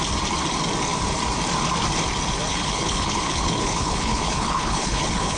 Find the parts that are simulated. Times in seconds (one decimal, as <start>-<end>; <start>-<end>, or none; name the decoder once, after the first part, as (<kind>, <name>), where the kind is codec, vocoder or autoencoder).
2.5-5.4 (codec, HILCodec)